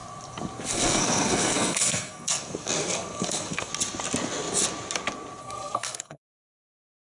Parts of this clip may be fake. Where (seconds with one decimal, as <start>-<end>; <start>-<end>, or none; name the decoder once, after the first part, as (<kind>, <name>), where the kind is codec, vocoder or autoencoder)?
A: 0.7-3.7 (codec, SNAC); 5.4-7.0